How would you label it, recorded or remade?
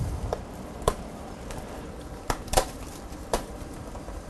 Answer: remade